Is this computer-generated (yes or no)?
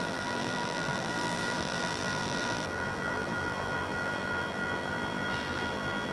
yes